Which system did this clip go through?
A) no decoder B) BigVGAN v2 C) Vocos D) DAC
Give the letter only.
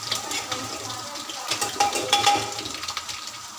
B